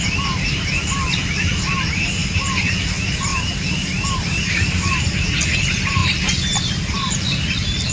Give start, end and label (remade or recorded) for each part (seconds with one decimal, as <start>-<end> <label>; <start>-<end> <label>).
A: 0.0-3.3 recorded; 3.3-4.4 remade; 4.4-7.9 recorded